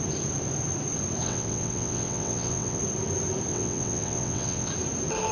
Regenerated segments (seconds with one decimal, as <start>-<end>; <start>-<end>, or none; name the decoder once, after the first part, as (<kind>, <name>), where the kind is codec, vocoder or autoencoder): 1.2-2.8 (vocoder, WaveNeXt); 3.5-4.7